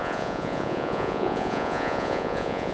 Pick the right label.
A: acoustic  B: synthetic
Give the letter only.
B